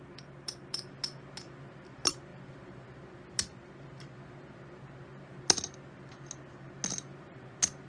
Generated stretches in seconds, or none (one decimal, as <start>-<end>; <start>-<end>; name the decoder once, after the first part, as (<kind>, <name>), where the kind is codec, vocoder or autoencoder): none